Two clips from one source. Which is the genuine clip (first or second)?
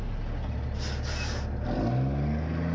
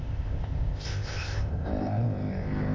first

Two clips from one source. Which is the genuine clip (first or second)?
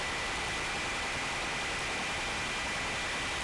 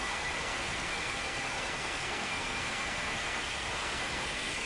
first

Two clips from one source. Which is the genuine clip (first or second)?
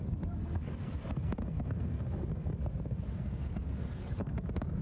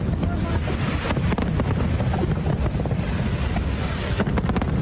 second